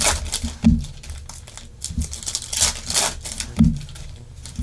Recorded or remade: recorded